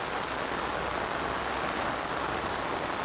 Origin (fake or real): real